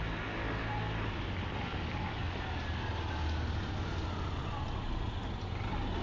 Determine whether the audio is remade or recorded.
recorded